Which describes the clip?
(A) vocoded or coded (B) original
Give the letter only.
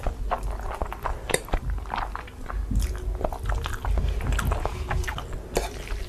B